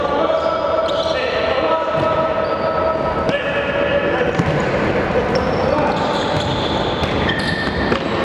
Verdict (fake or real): real